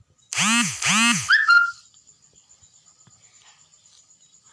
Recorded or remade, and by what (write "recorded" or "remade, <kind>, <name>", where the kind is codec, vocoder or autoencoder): recorded